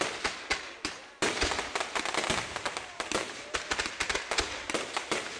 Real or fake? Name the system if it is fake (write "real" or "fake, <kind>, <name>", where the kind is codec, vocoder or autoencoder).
real